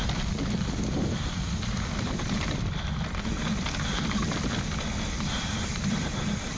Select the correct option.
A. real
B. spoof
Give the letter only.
B